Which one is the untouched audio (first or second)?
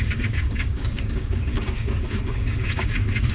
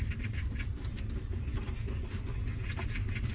second